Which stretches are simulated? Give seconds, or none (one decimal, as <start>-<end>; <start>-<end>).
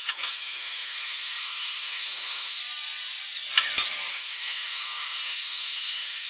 0.0-2.6; 4.1-6.3